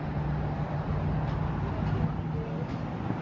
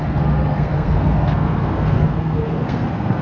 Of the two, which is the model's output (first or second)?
second